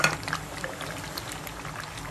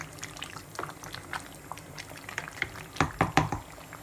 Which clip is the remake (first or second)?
second